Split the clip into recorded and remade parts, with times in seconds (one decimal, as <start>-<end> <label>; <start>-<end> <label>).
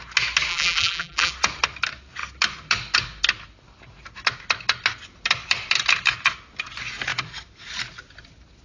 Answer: 0.0-0.5 recorded; 0.5-1.3 remade; 1.3-8.6 recorded